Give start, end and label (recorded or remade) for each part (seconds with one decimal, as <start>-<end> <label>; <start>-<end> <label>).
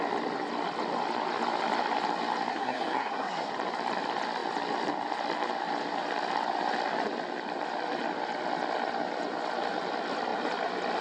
0.0-2.5 recorded; 2.5-3.5 remade; 3.5-11.0 recorded